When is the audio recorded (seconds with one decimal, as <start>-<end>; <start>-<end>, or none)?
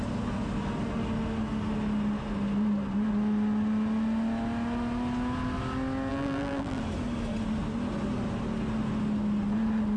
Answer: 0.0-6.1; 6.8-10.0